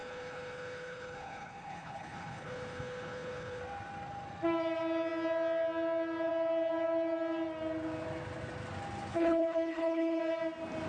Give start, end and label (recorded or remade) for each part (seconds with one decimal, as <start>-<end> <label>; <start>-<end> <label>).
0.0-3.6 remade; 3.6-9.1 recorded; 9.1-10.2 remade; 10.2-10.9 recorded